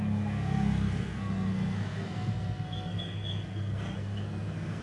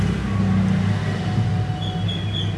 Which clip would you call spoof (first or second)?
first